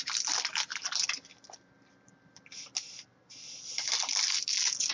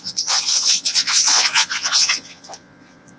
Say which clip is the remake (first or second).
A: second